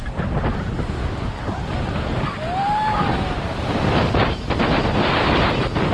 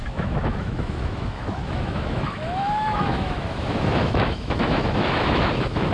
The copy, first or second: second